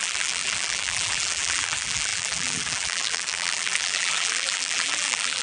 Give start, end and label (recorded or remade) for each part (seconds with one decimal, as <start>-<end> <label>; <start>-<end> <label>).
0.0-5.4 remade